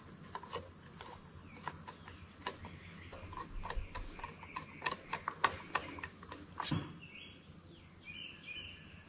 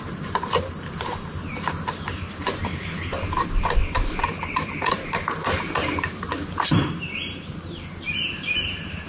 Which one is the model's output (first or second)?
second